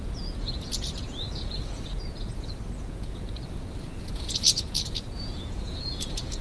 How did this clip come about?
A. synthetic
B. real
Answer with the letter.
A